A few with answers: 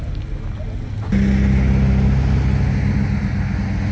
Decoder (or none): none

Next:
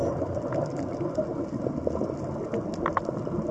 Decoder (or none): none